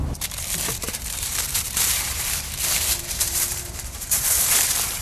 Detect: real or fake fake